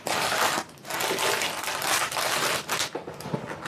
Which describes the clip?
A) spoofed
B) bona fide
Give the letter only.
B